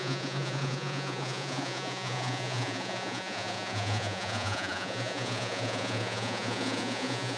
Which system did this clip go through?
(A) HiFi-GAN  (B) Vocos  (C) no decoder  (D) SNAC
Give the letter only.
B